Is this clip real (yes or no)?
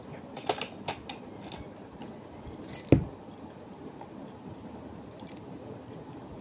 yes